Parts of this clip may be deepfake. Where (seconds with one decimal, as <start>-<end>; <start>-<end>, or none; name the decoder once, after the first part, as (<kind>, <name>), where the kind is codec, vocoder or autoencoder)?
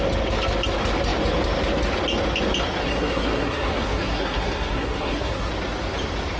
2.8-5.5 (codec, SNAC)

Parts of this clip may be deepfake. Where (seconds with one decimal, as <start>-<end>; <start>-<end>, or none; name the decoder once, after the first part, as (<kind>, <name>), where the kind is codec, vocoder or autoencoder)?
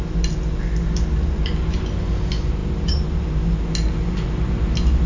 none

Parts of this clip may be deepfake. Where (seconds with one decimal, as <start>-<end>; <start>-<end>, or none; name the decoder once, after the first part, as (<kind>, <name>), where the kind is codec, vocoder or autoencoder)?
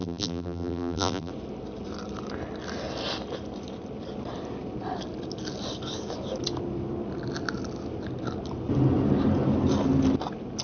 0.0-1.3 (vocoder, BigVGAN v2)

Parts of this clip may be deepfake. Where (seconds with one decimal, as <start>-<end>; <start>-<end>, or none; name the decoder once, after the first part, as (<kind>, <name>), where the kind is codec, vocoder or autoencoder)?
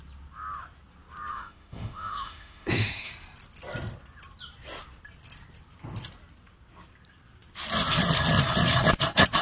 1.3-3.1 (autoencoder, DAC-VAE)